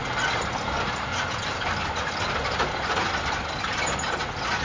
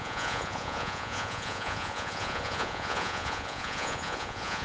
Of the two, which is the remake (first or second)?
second